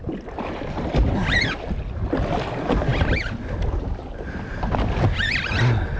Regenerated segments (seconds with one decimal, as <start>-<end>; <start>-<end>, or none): none